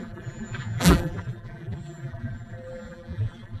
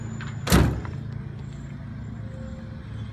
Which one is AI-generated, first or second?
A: first